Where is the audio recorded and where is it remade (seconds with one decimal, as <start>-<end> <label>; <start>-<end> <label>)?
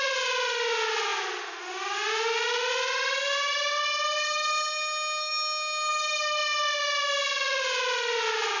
0.0-8.6 recorded